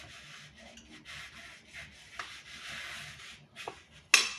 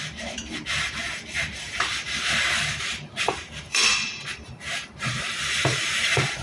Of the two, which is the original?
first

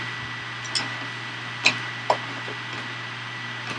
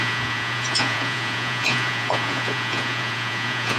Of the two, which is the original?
first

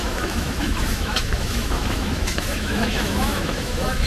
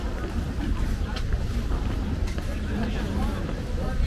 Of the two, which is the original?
second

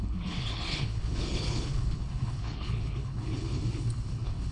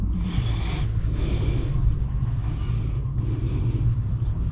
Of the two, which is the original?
second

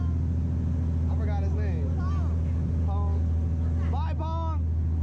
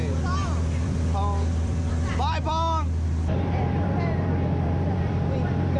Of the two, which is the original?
first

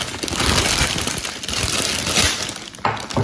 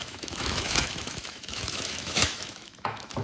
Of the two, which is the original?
first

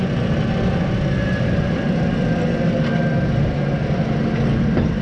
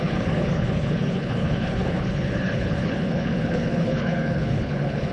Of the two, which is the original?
first